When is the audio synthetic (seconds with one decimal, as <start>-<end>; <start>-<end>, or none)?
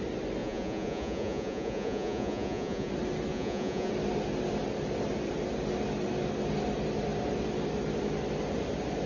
0.4-2.9; 3.3-3.9